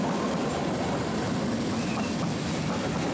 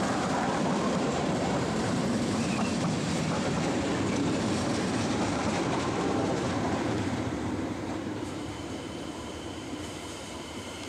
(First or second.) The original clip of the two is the first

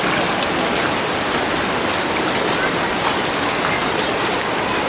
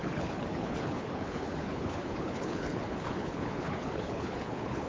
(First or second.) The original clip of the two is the first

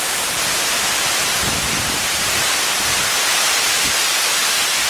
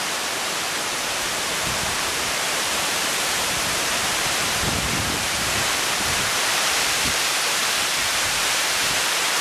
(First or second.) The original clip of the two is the first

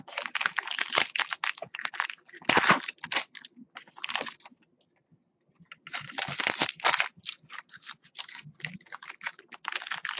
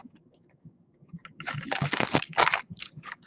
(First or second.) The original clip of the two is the first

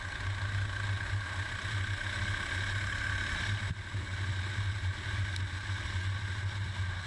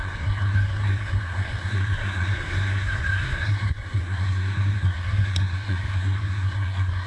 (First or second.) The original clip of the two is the first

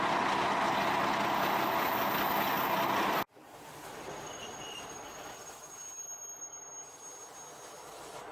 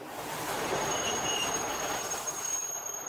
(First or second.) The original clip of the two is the first